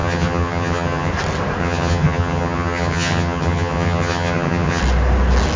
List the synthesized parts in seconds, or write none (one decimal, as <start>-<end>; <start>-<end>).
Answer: 0.0-1.1; 1.6-4.8